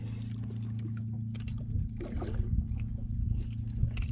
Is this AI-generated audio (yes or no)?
no